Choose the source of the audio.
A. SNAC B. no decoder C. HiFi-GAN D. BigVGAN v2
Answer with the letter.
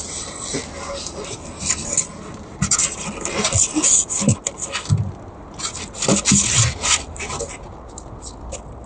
B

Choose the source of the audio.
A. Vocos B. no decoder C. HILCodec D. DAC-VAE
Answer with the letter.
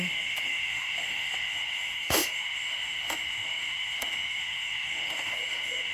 D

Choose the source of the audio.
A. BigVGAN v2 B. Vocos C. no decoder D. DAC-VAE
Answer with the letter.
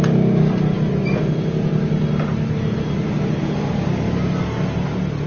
C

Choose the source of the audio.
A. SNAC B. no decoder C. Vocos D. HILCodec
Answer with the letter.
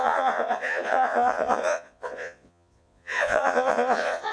C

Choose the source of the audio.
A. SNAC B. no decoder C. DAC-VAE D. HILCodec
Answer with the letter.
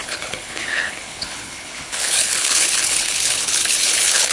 D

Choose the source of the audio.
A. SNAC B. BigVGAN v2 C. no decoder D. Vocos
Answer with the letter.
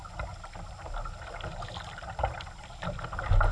C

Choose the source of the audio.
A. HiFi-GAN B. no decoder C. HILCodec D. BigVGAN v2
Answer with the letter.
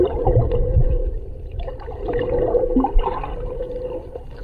D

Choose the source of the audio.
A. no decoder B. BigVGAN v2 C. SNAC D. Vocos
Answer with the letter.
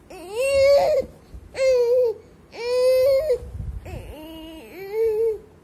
A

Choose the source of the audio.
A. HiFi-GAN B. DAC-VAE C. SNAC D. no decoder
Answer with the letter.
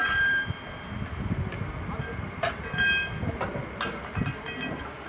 D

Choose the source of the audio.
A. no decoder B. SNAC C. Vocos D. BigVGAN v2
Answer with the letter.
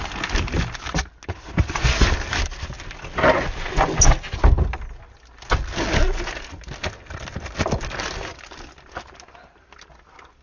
A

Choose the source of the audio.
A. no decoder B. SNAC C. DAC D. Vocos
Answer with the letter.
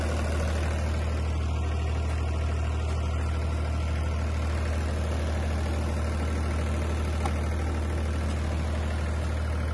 A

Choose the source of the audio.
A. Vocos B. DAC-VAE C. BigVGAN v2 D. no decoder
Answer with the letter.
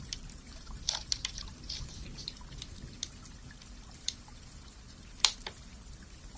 C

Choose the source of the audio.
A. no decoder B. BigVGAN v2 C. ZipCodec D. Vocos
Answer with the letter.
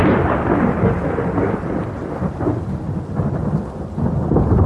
B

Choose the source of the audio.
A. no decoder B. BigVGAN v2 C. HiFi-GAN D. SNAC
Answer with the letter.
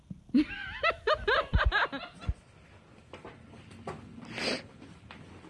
A